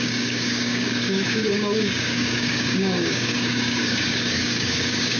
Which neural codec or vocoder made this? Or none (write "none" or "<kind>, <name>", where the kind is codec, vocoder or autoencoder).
codec, DAC